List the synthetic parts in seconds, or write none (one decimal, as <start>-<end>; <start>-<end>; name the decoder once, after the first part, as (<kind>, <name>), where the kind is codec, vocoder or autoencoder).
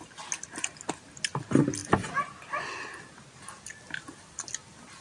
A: none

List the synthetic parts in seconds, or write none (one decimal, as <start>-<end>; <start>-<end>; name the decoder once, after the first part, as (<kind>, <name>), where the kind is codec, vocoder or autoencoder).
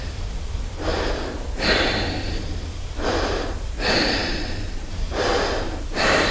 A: 0.0-6.3 (vocoder, BigVGAN v2)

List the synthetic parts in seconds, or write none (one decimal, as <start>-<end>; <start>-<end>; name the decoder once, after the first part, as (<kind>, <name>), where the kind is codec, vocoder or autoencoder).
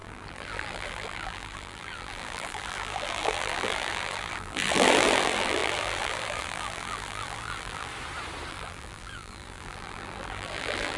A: 0.0-7.9 (vocoder, BigVGAN v2); 8.5-11.0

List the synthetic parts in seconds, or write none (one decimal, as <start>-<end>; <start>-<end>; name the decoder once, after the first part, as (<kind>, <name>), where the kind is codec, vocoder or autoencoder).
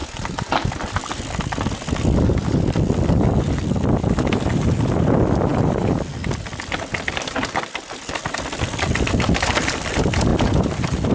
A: 0.0-3.4 (vocoder, BigVGAN v2); 5.5-6.1; 6.9-9.0; 10.3-11.1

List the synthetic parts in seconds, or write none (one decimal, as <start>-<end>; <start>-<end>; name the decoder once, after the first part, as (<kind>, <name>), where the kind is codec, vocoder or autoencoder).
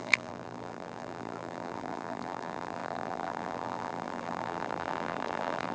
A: 0.0-5.7 (vocoder, BigVGAN v2)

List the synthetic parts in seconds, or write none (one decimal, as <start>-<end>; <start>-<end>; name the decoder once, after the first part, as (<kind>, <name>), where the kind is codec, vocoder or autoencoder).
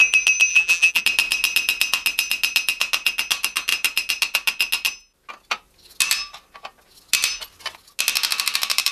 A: 0.5-1.0 (vocoder, BigVGAN v2)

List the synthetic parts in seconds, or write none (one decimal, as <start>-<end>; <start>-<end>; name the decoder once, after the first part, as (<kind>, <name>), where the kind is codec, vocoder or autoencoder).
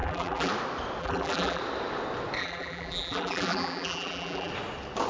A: 0.0-0.5 (vocoder, BigVGAN v2); 1.0-1.6; 2.4-4.5